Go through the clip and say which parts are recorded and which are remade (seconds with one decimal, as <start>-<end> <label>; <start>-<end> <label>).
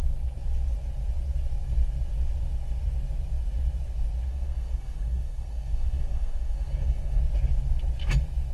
0.0-4.3 recorded; 4.3-7.2 remade; 7.2-8.5 recorded